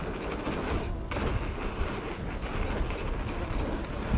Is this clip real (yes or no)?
yes